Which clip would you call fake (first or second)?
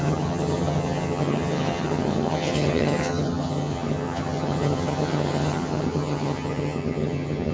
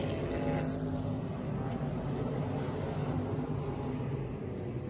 first